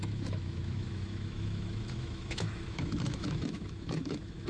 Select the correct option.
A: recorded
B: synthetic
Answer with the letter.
B